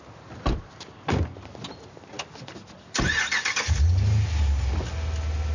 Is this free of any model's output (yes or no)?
yes